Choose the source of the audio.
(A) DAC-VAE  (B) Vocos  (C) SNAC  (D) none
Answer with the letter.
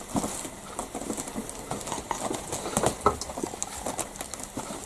D